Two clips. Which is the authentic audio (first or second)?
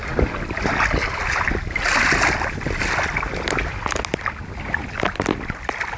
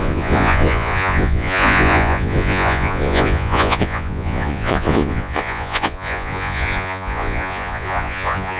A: first